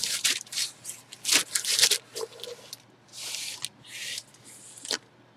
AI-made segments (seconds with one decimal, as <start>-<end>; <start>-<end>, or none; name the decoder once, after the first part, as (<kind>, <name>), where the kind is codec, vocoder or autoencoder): 0.0-0.7 (vocoder, BigVGAN v2)